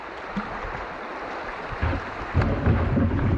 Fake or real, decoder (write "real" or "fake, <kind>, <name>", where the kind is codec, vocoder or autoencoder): real